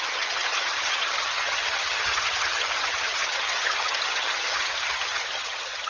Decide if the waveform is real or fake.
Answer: fake